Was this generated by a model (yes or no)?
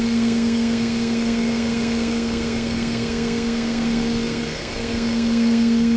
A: yes